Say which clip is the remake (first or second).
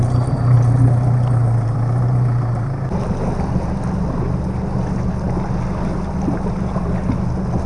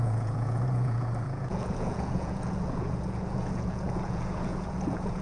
second